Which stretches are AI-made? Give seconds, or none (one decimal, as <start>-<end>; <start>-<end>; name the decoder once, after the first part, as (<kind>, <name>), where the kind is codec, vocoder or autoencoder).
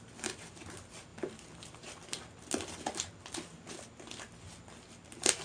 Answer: none